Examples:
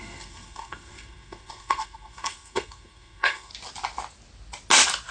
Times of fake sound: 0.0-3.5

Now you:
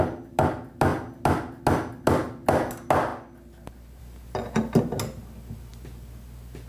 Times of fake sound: none

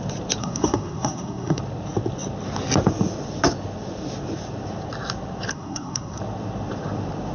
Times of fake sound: 0.4-1.6; 5.5-6.2

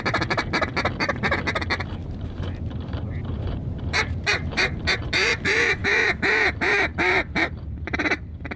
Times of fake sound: 2.0-5.1; 5.8-8.2

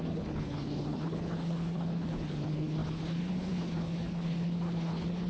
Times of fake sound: 0.0-5.3

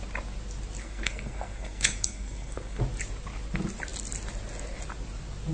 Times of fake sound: 0.8-2.8